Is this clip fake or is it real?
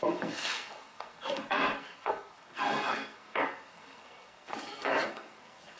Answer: fake